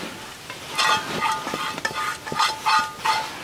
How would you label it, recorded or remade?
recorded